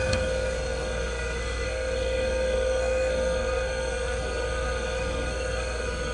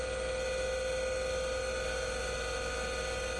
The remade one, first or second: first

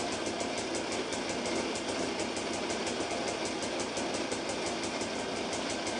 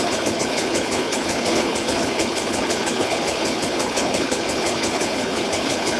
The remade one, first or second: second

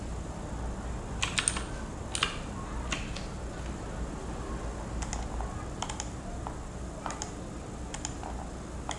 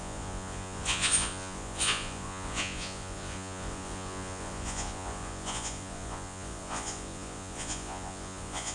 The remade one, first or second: second